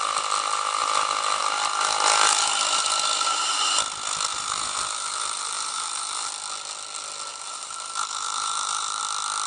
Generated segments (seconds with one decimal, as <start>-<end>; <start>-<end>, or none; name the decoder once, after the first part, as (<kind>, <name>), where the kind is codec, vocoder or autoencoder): 4.3-6.3 (vocoder, BigVGAN v2); 7.3-9.0